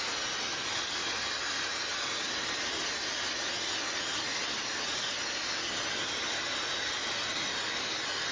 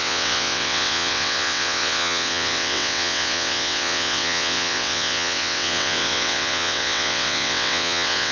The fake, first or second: second